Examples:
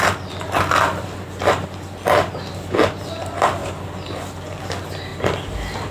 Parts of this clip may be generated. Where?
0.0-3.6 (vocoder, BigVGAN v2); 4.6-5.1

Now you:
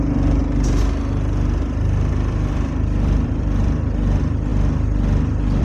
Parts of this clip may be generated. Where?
0.0-0.4 (vocoder, BigVGAN v2); 2.1-4.5

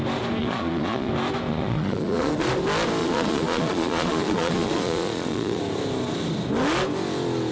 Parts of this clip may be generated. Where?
0.4-1.1 (vocoder, Vocos); 1.5-2.5; 3.0-5.6

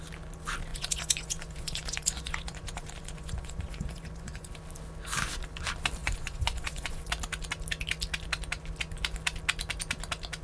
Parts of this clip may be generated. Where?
0.7-4.5 (vocoder, Vocos); 6.0-7.1

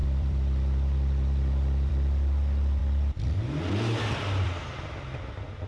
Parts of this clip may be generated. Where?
0.0-1.9 (vocoder, BigVGAN v2); 2.8-4.5

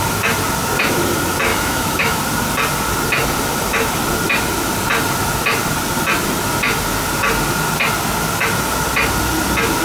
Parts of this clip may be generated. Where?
1.5-2.2 (autoencoder, DAC-VAE)